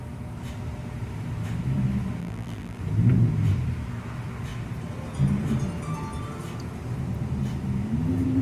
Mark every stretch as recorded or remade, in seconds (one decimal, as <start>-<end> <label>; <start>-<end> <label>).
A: 0.0-2.2 recorded; 2.2-2.8 remade; 2.8-8.4 recorded